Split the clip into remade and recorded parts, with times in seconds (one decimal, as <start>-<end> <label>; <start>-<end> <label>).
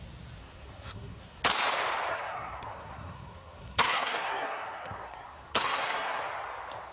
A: 0.0-0.4 recorded; 0.4-1.4 remade; 1.4-2.1 recorded; 2.1-6.2 remade; 6.2-6.9 recorded